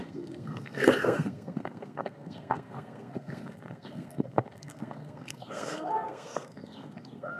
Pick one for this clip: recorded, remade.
remade